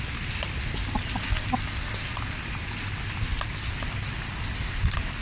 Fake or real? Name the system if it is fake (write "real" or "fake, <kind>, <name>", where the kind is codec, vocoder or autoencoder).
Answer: real